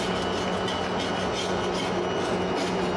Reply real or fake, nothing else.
real